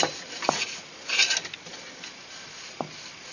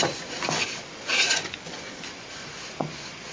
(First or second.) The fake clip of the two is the second